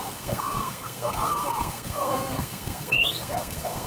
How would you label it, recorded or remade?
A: remade